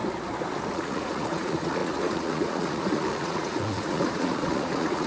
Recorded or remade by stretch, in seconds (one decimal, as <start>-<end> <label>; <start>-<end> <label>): 0.0-0.7 recorded; 0.7-5.1 remade